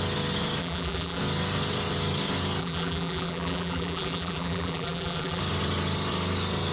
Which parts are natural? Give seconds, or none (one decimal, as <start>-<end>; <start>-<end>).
0.0-0.6; 1.2-2.6; 5.4-6.7